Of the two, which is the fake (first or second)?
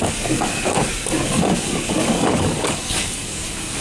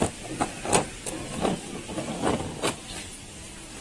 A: first